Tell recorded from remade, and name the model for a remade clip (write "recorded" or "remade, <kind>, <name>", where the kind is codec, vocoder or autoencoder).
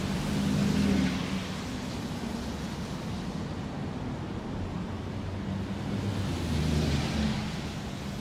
recorded